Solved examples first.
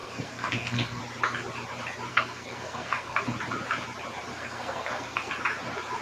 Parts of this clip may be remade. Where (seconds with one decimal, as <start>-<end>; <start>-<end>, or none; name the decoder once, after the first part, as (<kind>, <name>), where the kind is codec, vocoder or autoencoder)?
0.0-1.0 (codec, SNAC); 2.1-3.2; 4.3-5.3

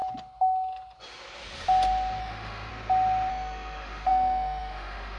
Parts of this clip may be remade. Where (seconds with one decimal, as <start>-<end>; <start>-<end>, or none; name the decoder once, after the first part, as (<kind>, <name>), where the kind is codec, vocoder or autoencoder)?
2.2-2.7 (autoencoder, DAC-VAE); 3.3-5.2

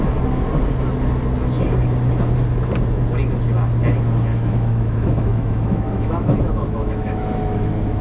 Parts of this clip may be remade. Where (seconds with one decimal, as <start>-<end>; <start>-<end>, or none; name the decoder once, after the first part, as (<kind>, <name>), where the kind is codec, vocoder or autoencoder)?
4.3-8.0 (autoencoder, DAC-VAE)

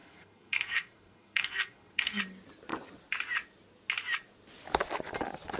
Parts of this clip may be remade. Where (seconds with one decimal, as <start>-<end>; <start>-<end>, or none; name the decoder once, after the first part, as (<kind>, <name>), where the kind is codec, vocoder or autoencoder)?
0.0-2.2 (codec, SNAC)